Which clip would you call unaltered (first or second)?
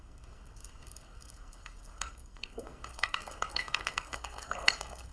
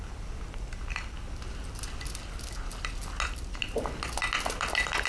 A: second